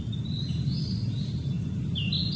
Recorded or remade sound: recorded